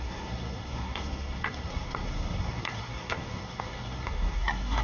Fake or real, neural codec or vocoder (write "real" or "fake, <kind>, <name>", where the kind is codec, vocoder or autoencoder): fake, codec, SNAC